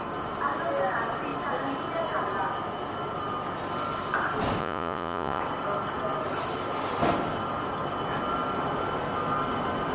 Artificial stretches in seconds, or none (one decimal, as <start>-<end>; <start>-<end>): 4.6-5.4